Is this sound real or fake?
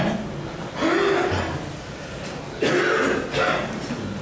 real